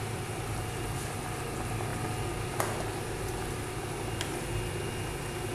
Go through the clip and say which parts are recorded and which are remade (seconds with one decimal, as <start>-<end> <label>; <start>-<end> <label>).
0.0-5.5 recorded